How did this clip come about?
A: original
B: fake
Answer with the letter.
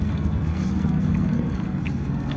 B